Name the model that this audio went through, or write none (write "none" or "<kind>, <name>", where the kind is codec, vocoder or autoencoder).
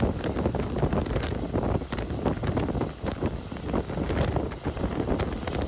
none